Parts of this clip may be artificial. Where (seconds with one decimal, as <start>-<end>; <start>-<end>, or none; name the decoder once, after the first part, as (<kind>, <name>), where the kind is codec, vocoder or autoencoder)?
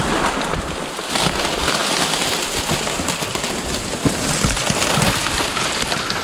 none